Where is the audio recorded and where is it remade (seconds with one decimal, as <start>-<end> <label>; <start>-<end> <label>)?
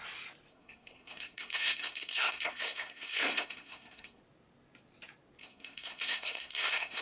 0.0-0.5 recorded; 0.5-4.2 remade; 4.2-5.4 recorded; 5.4-7.0 remade